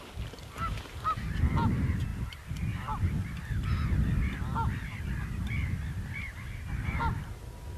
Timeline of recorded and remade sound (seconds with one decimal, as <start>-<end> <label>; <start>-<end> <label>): 0.0-7.8 recorded